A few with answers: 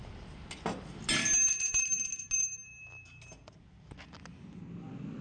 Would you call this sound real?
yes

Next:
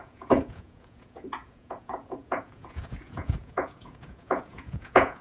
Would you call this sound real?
no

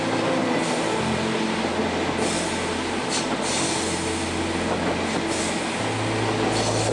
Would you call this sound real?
yes